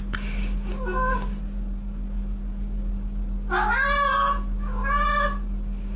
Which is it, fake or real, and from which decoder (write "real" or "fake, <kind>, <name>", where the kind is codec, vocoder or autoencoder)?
real